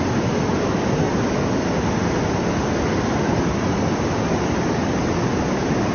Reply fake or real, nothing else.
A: real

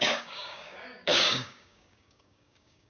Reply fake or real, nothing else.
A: fake